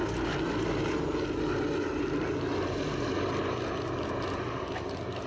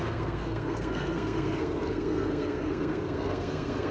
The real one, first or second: first